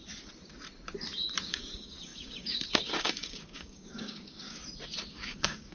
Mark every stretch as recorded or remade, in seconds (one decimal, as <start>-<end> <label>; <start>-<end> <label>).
0.0-1.4 recorded; 1.4-4.6 remade; 4.6-5.1 recorded; 5.1-5.7 remade